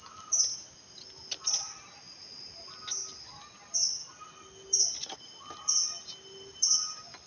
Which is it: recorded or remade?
recorded